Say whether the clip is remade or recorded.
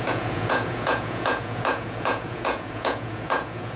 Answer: remade